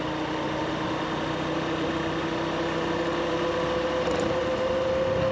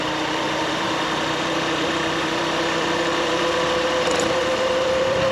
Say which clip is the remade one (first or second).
second